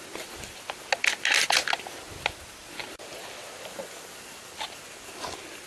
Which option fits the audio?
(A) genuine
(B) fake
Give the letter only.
A